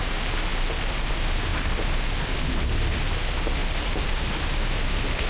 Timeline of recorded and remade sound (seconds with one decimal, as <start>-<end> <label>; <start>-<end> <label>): 0.0-3.6 recorded; 3.6-4.3 remade; 4.3-5.3 recorded